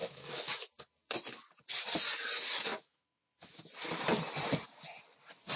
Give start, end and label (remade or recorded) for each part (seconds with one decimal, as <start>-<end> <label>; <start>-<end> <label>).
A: 0.0-0.8 remade; 0.8-2.7 recorded; 2.7-3.6 remade; 3.6-5.6 recorded